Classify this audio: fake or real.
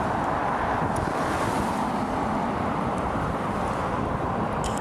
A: fake